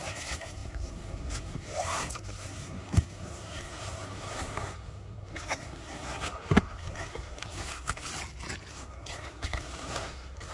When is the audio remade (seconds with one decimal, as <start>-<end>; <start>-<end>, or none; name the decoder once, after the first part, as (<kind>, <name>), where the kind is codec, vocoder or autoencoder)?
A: 0.0-8.1 (codec, SNAC); 8.7-10.5